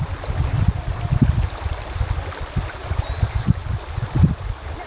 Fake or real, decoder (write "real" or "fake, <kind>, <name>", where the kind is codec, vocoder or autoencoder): real